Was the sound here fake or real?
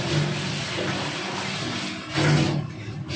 real